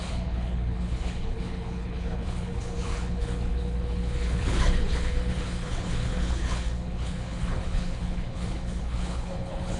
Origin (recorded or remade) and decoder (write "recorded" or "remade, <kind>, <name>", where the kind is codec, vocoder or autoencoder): remade, codec, HILCodec